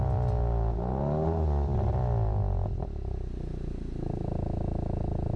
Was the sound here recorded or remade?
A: recorded